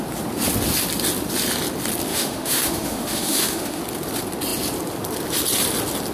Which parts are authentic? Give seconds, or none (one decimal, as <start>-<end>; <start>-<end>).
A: 0.0-2.1; 3.8-6.1